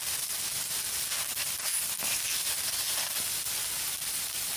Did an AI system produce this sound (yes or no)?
no